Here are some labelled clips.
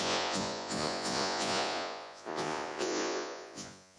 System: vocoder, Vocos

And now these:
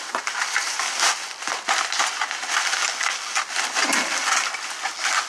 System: none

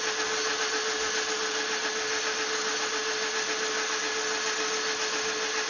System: none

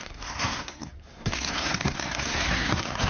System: codec, SNAC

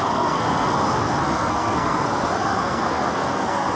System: codec, SNAC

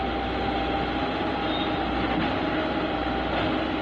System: none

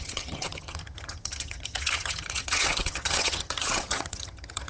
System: vocoder, HiFi-GAN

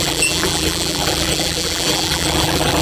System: vocoder, BigVGAN v2